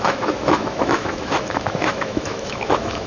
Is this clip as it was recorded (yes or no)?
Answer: no